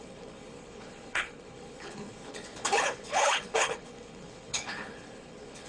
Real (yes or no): no